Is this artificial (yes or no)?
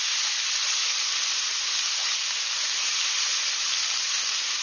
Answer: no